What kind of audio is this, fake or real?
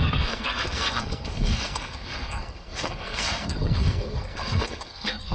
fake